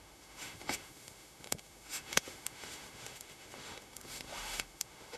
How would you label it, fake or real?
fake